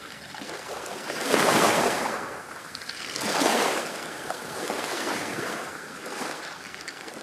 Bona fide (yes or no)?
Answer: no